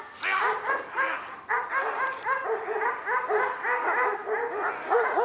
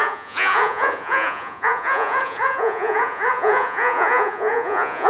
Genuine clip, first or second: first